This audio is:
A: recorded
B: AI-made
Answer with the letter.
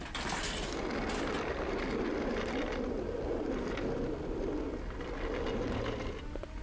A